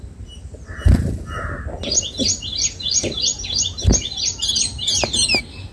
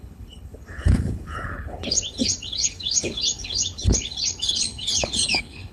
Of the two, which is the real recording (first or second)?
first